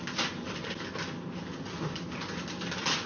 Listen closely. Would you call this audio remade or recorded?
recorded